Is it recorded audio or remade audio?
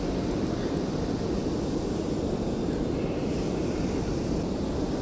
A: recorded